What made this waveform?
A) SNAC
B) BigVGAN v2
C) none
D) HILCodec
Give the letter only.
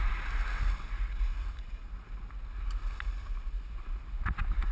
C